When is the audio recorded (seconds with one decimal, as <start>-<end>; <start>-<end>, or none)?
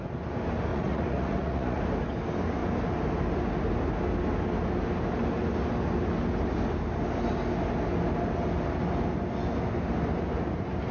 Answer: 0.0-0.7; 1.8-10.9